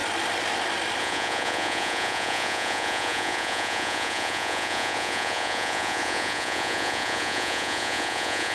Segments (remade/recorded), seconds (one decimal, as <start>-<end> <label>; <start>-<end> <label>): 0.0-1.0 recorded; 1.0-8.5 remade